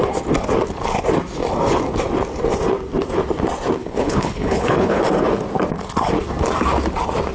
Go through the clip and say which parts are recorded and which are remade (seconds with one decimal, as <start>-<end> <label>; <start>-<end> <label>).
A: 0.0-3.8 recorded; 3.8-5.0 remade; 5.0-7.3 recorded